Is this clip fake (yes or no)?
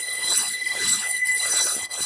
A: yes